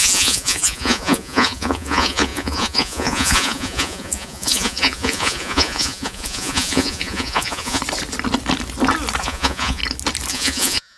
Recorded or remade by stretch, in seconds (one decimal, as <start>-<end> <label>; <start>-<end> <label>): 0.0-7.8 remade; 7.8-9.2 recorded; 9.2-9.8 remade; 9.8-10.3 recorded; 10.3-11.0 remade